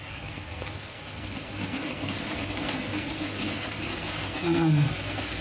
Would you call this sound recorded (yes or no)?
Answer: no